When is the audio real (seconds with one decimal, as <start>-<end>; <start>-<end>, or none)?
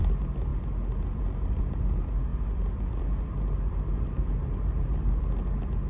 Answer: 0.0-0.5; 1.8-2.3; 5.2-5.9